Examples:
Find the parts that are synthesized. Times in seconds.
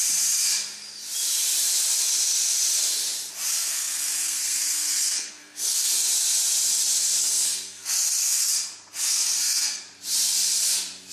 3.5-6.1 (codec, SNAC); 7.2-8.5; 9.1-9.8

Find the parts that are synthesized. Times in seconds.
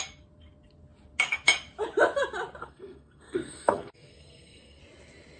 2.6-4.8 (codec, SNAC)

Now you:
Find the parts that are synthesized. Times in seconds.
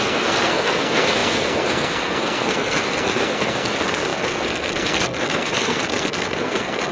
0.0-6.9 (codec, SNAC)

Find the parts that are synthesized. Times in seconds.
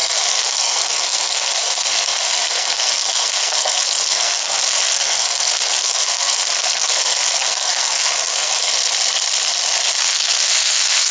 0.0-8.7 (codec, SNAC); 10.0-11.1